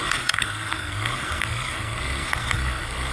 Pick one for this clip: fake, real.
fake